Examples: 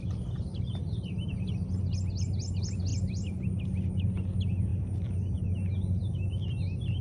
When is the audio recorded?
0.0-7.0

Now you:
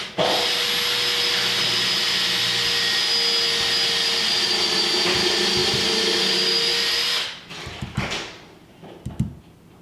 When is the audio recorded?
0.0-9.8

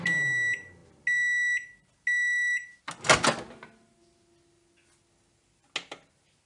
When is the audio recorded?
0.0-6.5

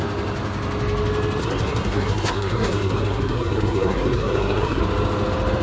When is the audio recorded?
0.0-1.4; 4.8-5.6